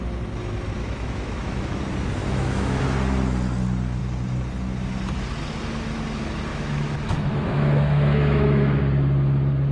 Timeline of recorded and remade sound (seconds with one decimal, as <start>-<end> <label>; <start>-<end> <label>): 0.0-0.8 recorded; 0.8-1.8 remade; 1.8-2.2 recorded; 2.2-2.8 remade; 2.8-6.5 recorded; 6.5-8.8 remade; 8.8-9.7 recorded